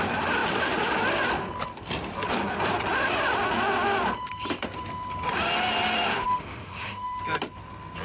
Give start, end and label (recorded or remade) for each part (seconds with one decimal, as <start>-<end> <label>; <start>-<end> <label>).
0.0-6.1 recorded; 6.1-7.2 remade; 7.2-8.0 recorded